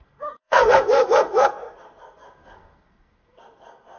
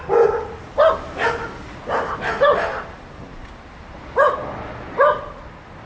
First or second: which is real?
second